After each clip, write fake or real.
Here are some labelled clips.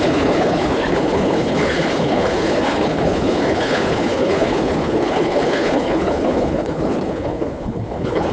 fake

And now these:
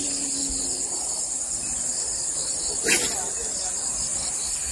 real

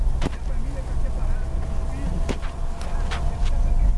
real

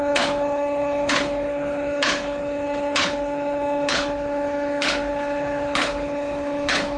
fake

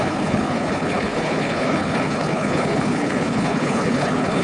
fake